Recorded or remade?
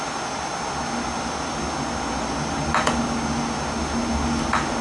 recorded